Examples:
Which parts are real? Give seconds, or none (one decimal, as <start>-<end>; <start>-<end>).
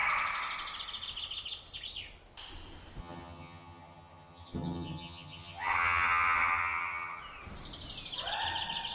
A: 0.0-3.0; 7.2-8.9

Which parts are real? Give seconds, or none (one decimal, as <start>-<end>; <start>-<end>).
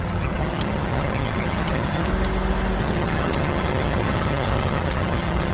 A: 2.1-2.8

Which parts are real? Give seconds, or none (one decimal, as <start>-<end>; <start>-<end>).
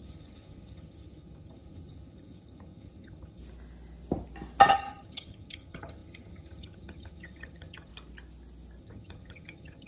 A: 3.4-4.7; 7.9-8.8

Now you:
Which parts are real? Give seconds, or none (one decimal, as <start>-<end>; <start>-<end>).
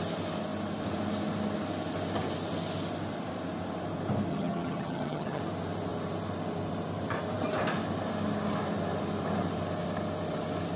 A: 0.0-4.3; 5.4-10.8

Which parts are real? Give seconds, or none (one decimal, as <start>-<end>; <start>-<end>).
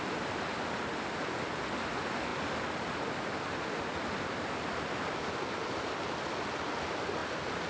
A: 0.0-7.7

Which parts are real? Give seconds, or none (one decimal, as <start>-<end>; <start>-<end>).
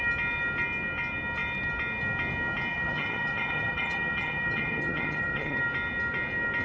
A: 0.0-2.7; 5.6-6.6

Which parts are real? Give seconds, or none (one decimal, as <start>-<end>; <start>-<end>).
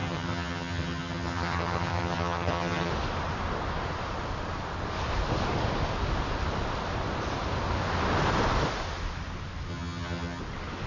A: 2.9-9.7; 10.4-10.9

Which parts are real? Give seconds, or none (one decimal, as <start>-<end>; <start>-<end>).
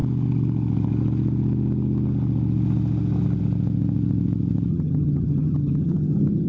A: 0.0-4.7